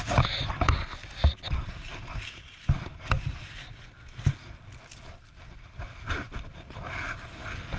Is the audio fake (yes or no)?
no